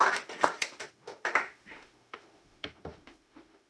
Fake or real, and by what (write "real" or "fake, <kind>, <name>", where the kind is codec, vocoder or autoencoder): fake, autoencoder, DAC-VAE